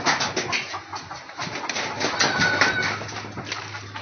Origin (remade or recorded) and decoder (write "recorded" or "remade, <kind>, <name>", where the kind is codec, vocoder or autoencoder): recorded